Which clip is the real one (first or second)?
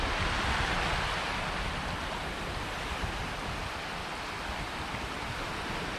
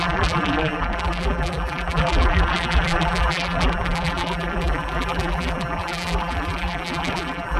first